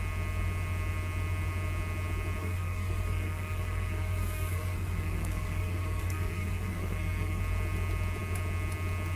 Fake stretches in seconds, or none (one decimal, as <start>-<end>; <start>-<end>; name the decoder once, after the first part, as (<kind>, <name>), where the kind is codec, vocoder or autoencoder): 2.4-7.4 (codec, SNAC)